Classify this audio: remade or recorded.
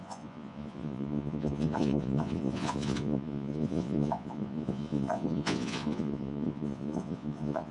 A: remade